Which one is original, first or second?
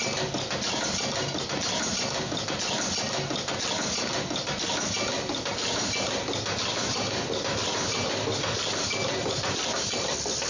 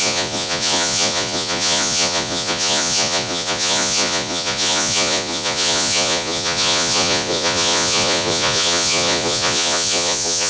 first